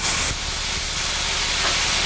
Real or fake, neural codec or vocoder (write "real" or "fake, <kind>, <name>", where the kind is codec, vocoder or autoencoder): real